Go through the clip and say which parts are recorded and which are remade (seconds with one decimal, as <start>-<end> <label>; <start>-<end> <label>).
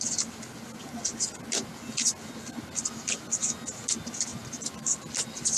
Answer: 0.0-5.6 recorded